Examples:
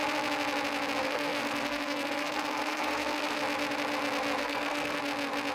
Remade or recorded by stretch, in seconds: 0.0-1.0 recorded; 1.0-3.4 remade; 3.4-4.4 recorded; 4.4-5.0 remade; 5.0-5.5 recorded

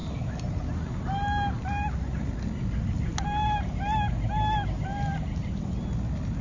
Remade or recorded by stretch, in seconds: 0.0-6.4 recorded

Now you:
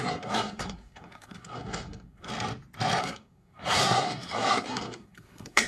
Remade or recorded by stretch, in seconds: 0.0-2.3 remade; 2.3-3.0 recorded; 3.0-5.7 remade

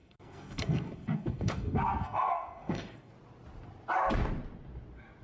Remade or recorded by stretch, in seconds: 0.0-3.1 remade; 3.1-5.2 recorded

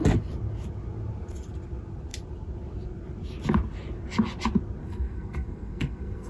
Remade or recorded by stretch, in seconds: 0.0-4.8 recorded; 4.8-6.3 remade

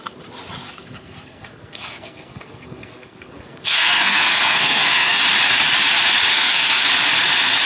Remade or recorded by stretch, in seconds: 0.0-0.6 recorded; 0.6-5.2 remade; 5.2-6.3 recorded; 6.3-6.9 remade; 6.9-7.7 recorded

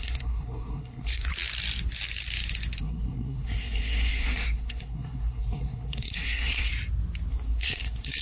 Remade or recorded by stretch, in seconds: 0.0-1.3 remade; 1.3-2.8 recorded; 2.8-6.7 remade; 6.7-7.3 recorded; 7.3-8.2 remade

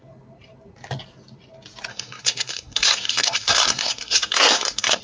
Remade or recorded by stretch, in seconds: 0.0-1.9 recorded; 1.9-5.0 remade